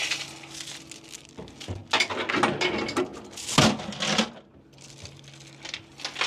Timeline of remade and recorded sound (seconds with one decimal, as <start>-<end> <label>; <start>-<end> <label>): 0.0-6.3 recorded